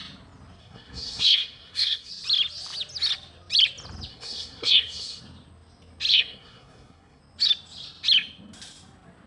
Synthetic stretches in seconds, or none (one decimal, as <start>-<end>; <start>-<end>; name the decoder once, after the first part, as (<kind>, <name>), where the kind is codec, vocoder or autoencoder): 0.6-2.1 (codec, SNAC); 4.1-5.2; 6.1-7.2